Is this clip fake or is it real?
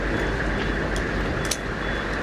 real